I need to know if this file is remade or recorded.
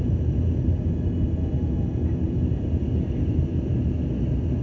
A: recorded